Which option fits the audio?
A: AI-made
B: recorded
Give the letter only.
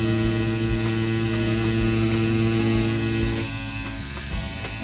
B